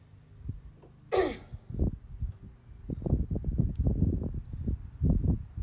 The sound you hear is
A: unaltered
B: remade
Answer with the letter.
A